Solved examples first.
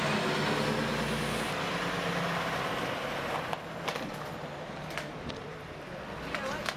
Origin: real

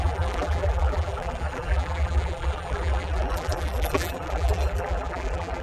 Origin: fake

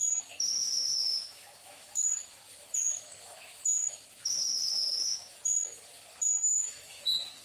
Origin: fake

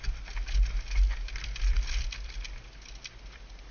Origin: real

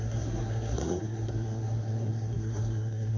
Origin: fake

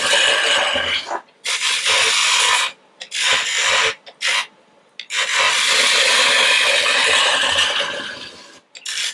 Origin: real